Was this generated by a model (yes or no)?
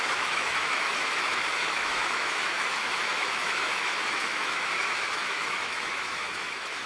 yes